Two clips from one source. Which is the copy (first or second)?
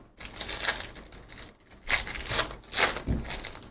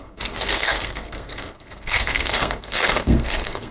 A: second